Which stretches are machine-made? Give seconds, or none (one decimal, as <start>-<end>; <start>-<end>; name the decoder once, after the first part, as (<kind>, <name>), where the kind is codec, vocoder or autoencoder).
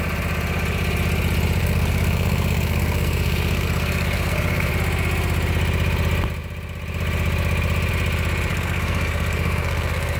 1.6-4.7 (codec, SNAC); 8.5-10.2